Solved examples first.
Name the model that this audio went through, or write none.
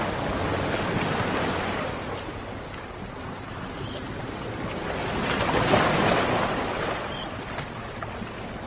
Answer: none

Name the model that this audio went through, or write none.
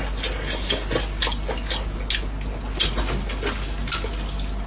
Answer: none